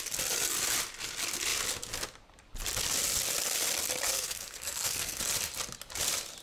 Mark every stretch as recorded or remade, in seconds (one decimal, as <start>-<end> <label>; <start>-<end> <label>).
0.0-4.1 recorded; 4.1-5.2 remade; 5.2-6.4 recorded